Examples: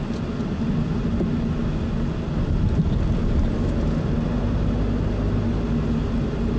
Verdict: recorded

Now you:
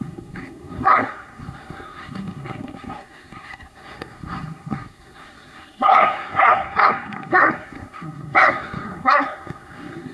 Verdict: remade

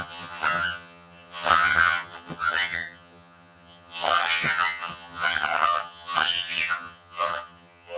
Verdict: remade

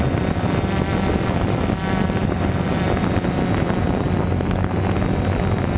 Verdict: recorded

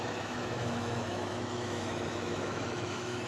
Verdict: remade